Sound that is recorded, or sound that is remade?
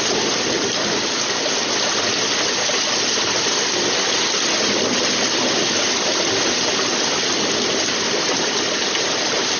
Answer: recorded